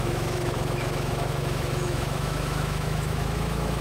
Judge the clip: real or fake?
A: fake